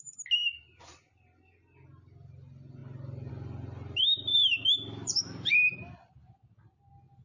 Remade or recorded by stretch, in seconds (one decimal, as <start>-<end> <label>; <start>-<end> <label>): 0.0-7.2 recorded